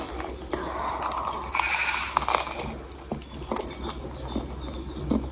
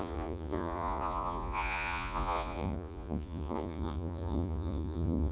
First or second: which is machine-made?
second